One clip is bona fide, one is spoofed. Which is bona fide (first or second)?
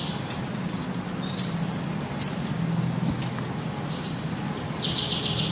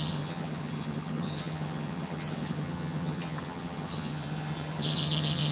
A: first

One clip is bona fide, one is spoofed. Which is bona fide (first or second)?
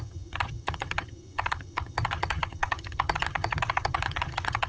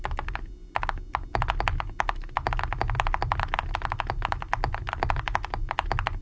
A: second